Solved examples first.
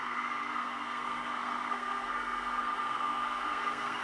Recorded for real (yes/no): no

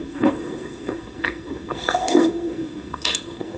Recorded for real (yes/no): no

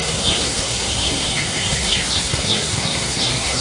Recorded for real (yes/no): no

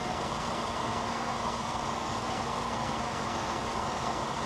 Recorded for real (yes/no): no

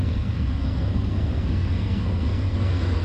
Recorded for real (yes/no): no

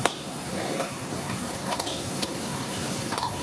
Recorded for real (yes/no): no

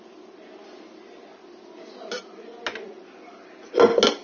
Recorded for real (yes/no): yes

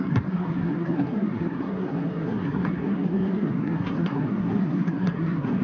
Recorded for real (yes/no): no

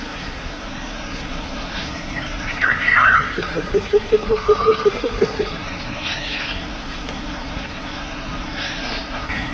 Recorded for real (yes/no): no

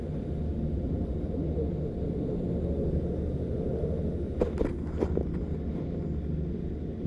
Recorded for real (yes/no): yes